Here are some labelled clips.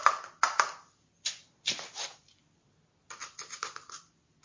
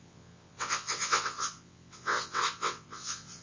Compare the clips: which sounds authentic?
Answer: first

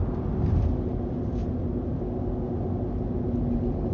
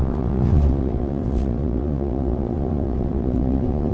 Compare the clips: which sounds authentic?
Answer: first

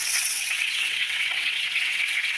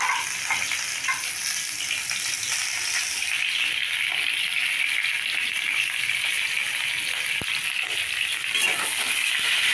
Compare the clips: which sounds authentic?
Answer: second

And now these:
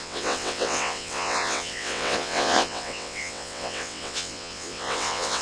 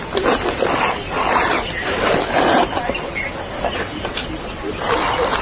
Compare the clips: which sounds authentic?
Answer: second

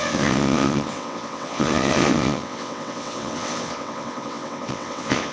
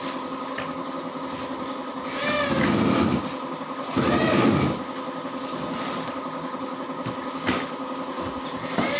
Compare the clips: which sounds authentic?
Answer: second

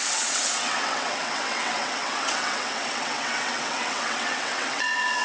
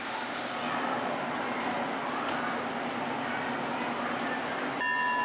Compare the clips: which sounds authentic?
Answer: second